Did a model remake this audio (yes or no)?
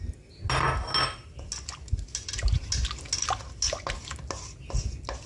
no